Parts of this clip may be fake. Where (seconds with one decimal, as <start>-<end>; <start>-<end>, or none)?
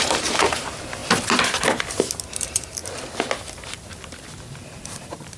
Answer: 0.0-1.0; 2.3-2.8; 4.6-5.4